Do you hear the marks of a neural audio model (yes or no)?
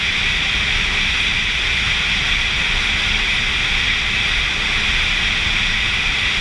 no